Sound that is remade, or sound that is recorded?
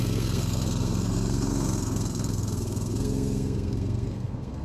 remade